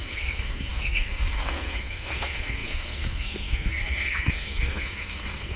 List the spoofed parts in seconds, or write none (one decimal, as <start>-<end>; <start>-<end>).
0.0-5.6